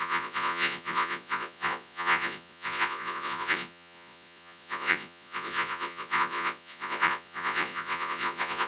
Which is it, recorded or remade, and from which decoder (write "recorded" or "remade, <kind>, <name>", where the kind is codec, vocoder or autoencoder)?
remade, vocoder, Vocos